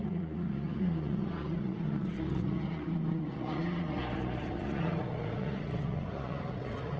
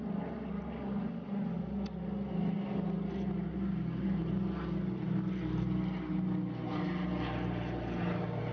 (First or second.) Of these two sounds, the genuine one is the second